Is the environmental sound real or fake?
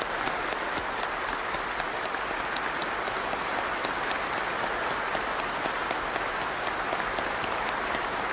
real